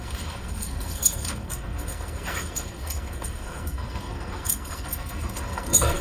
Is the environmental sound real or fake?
fake